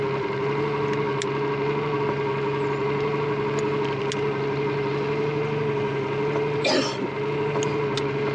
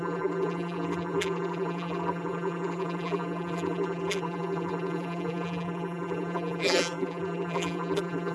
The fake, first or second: second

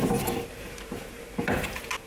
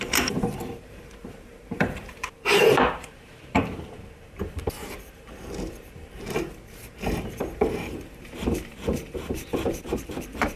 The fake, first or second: second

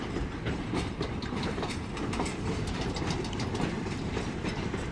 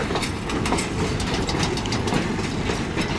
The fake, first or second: first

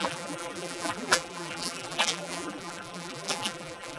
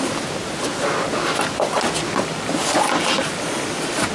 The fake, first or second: first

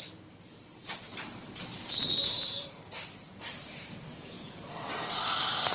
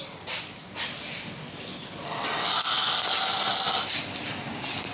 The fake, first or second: first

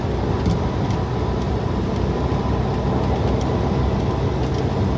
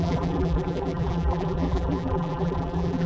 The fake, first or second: second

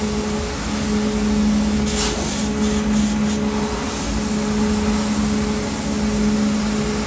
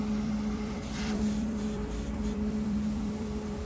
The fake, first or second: second